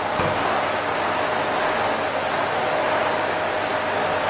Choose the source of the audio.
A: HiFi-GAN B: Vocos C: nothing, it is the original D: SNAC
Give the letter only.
C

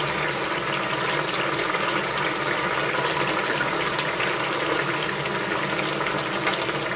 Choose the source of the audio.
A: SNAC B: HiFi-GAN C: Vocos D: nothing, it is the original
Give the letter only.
D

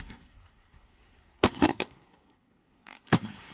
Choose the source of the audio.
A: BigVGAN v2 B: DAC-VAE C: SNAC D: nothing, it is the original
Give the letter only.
C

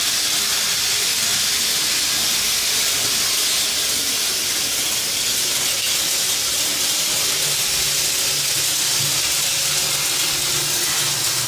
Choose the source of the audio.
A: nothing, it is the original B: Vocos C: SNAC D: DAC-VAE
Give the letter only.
A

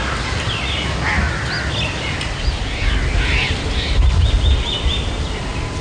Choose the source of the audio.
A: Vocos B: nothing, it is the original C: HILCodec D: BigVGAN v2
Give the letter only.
B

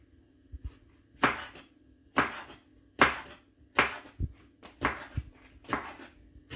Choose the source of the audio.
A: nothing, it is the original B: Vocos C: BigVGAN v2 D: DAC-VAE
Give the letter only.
A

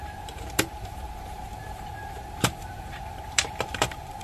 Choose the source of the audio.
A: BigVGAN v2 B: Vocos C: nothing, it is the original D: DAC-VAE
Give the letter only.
A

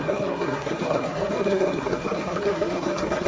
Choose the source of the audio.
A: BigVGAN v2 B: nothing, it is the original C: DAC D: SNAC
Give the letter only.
D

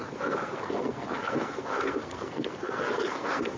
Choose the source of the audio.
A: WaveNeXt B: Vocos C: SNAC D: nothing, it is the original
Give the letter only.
C